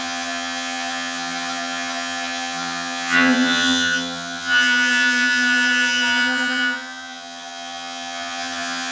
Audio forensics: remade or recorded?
remade